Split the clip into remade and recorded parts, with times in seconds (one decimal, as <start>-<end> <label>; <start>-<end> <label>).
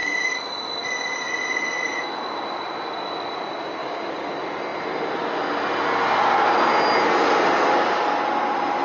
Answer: 0.0-3.8 recorded; 3.8-4.3 remade; 4.3-8.8 recorded